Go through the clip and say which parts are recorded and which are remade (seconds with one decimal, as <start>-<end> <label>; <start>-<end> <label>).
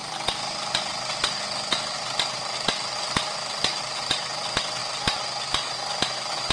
0.0-6.5 recorded